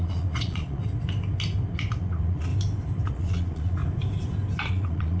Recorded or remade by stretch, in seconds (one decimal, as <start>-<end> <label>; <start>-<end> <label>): 0.0-0.8 remade; 0.8-2.0 recorded; 2.0-2.5 remade; 2.5-3.1 recorded; 3.1-3.8 remade; 3.8-4.7 recorded; 4.7-5.2 remade